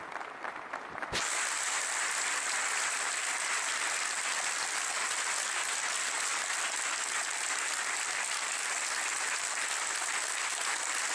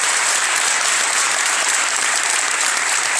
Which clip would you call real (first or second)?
first